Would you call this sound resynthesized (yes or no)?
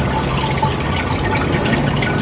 no